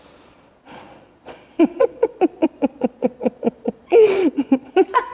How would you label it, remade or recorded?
remade